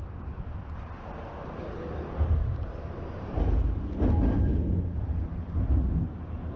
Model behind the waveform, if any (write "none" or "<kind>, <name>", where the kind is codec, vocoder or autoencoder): none